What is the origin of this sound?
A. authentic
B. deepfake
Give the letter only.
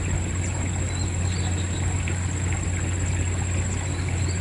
A